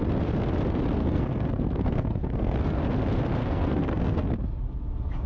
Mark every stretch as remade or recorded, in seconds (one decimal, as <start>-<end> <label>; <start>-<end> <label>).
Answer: 0.0-1.0 recorded; 1.0-2.8 remade; 2.8-3.4 recorded; 3.4-4.3 remade; 4.3-5.3 recorded